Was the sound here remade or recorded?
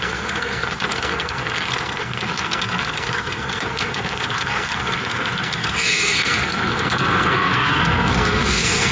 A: remade